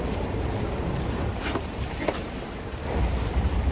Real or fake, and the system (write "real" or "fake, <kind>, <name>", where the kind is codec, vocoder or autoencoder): fake, vocoder, BigVGAN v2